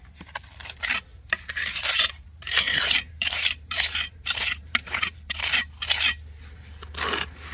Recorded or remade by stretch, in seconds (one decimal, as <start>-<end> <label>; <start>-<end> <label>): 0.0-1.1 recorded; 1.1-5.6 remade; 5.6-7.5 recorded